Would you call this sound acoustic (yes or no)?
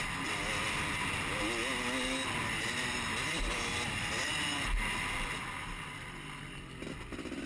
yes